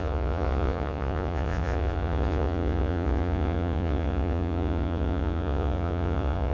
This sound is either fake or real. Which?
fake